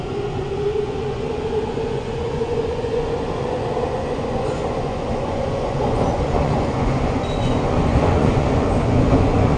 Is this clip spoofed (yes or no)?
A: yes